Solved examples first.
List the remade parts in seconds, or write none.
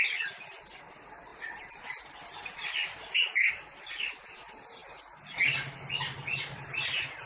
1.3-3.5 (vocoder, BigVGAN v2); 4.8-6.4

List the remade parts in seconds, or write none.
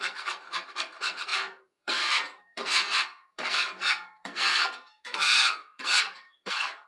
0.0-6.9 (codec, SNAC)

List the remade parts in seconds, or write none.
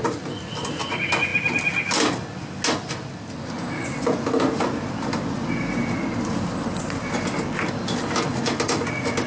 none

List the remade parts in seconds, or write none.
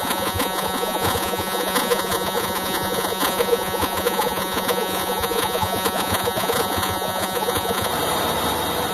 0.0-7.9 (vocoder, Vocos)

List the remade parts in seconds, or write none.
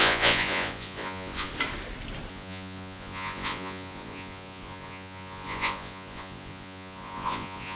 0.0-1.5 (vocoder, Vocos); 2.3-7.8